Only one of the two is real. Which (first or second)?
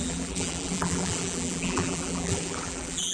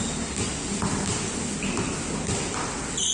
second